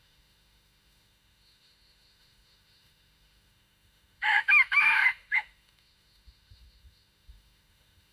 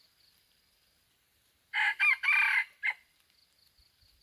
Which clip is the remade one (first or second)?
first